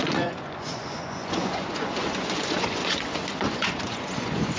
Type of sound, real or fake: fake